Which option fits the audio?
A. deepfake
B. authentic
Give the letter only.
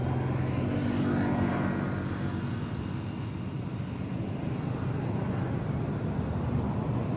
B